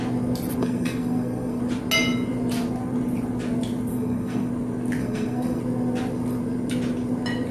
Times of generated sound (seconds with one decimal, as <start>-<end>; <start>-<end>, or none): 0.6-1.6; 3.9-4.5; 5.0-5.6